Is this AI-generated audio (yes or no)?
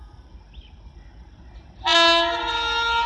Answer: no